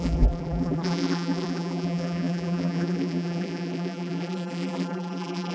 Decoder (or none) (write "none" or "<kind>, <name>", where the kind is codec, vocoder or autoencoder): vocoder, BigVGAN v2